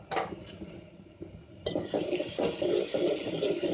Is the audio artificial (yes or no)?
no